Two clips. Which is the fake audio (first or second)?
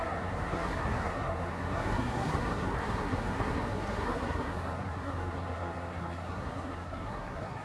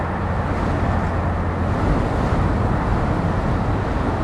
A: first